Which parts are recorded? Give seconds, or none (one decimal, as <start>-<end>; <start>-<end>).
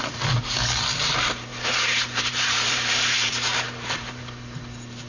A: 0.0-1.5; 4.6-5.1